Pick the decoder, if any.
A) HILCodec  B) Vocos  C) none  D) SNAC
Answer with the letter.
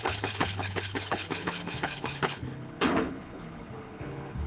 A